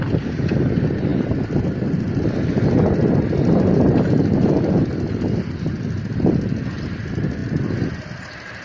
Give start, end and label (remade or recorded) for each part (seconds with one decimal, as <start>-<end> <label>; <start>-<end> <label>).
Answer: 0.0-8.6 recorded